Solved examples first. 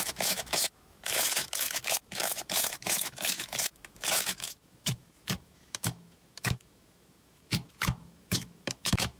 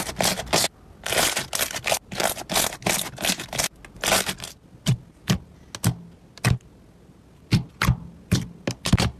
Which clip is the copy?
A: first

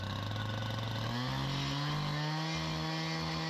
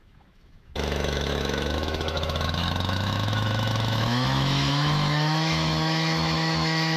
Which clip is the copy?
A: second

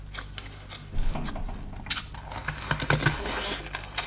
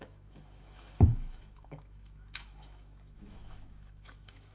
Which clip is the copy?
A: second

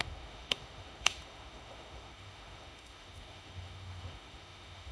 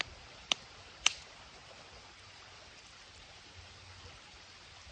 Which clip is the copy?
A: first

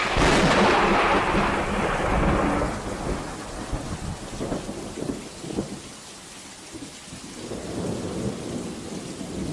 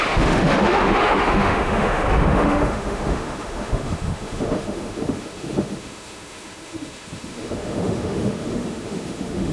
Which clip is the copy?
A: second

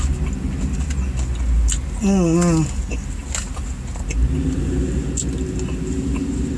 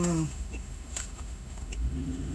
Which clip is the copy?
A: second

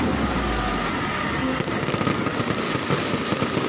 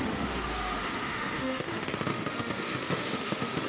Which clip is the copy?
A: second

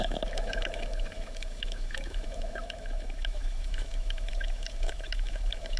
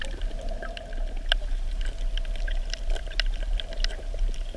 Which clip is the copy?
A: first